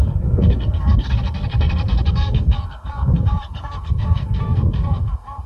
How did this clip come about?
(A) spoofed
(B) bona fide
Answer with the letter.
A